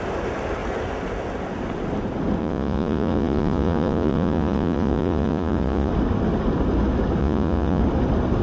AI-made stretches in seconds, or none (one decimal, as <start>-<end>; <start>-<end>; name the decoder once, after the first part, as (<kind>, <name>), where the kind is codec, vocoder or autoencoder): 2.4-5.9 (vocoder, Vocos); 7.2-7.8